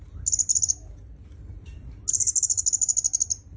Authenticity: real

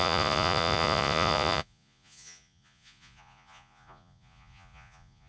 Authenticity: fake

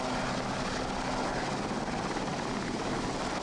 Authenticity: real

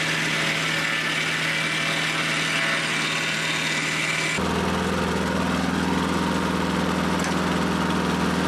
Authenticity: real